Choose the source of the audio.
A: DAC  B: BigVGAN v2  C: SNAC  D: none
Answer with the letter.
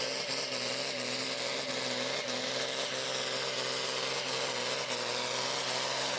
D